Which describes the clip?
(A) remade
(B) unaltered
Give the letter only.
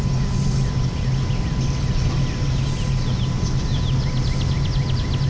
B